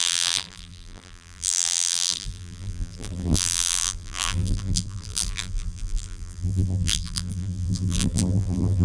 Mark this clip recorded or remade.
remade